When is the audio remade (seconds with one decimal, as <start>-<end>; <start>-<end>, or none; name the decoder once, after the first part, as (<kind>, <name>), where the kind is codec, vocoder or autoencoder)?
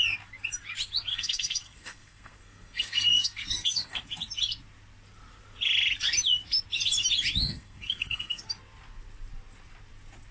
1.1-4.0 (codec, SNAC); 7.4-8.4